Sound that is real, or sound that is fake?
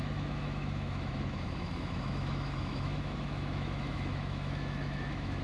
fake